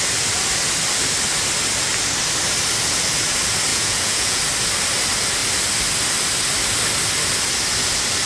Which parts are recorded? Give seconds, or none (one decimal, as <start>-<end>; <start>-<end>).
0.0-3.7; 4.4-8.3